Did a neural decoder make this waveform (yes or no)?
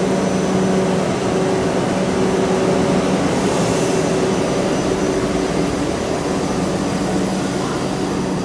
no